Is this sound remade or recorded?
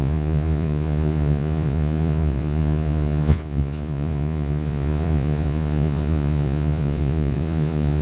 remade